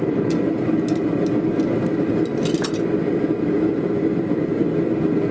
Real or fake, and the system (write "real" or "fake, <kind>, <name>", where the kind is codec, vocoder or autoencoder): real